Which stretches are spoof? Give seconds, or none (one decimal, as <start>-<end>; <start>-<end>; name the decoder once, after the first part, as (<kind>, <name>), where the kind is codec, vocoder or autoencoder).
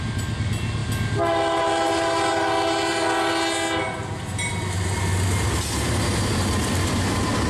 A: none